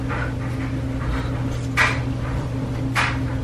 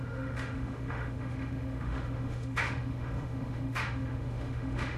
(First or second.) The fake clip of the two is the second